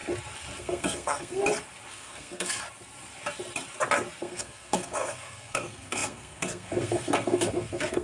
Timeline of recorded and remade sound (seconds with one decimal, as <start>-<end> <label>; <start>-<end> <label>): 0.0-0.6 recorded; 0.6-1.4 remade; 1.4-1.9 recorded; 1.9-2.6 remade; 2.6-4.2 recorded; 4.2-8.0 remade